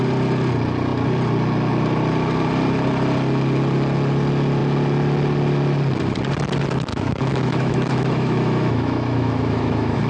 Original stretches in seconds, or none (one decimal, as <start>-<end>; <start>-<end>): 0.0-6.9